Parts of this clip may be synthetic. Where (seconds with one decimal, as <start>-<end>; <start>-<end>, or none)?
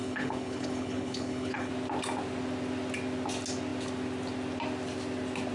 0.0-1.7